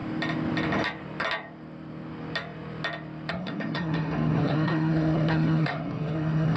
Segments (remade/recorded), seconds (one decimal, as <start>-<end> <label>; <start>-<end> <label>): 0.0-3.3 recorded; 3.3-6.6 remade